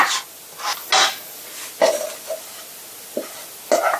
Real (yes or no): yes